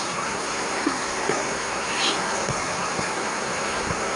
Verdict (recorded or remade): remade